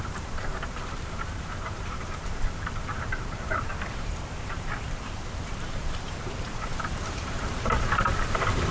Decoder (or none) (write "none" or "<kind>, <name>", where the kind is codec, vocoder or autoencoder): vocoder, BigVGAN v2